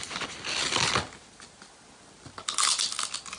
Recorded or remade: recorded